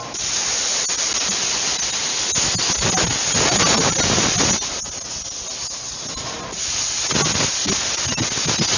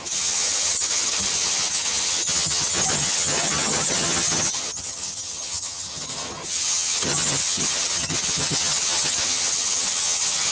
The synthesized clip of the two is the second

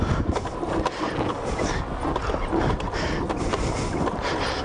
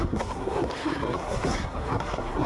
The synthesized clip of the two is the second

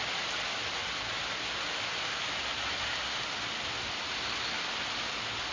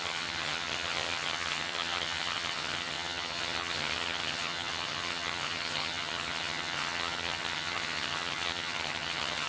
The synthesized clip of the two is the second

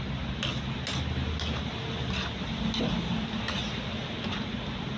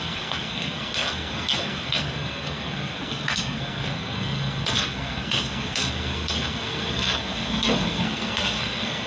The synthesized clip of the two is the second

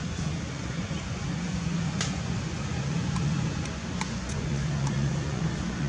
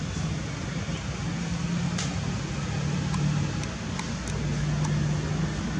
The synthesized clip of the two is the first